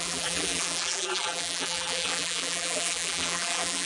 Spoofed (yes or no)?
yes